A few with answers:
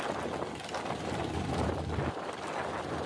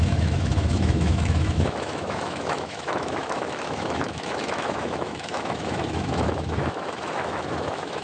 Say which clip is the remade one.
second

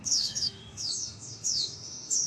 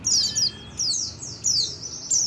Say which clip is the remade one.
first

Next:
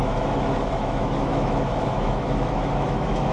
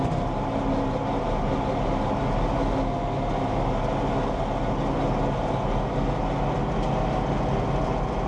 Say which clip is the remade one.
first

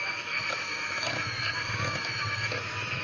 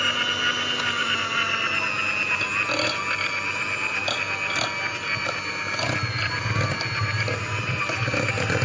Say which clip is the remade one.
first